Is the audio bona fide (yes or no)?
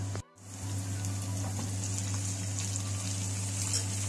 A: yes